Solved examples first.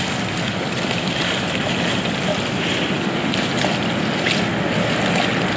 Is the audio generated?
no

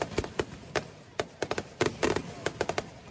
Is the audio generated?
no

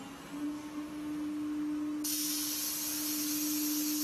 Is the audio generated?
no